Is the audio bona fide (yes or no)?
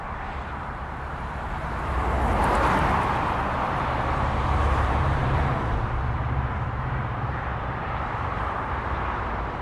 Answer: no